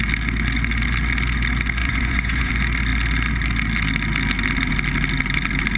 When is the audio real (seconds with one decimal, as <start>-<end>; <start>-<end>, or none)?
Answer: 0.0-1.8; 2.5-5.8